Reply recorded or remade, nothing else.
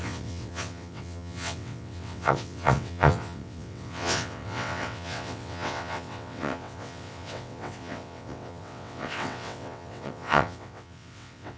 remade